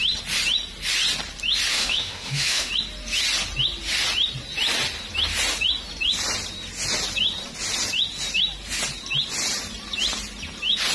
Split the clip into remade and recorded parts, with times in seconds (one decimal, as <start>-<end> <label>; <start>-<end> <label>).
0.0-1.7 recorded; 1.7-2.7 remade; 2.7-10.9 recorded